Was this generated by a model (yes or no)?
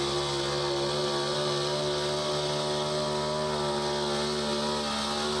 no